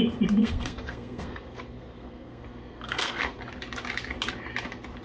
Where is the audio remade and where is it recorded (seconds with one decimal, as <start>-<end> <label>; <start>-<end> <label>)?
0.0-0.4 recorded; 0.4-3.4 remade; 3.4-5.0 recorded